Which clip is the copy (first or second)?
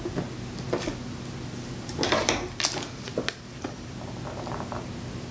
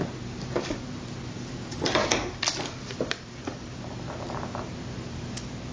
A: second